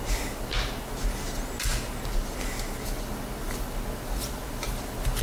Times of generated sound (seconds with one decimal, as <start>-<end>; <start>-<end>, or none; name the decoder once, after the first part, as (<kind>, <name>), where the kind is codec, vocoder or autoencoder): none